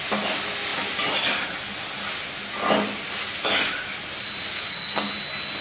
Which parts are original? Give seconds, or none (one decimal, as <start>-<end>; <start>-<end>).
0.0-4.5; 5.1-5.6